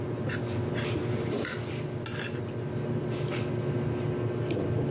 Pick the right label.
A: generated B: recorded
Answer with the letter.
B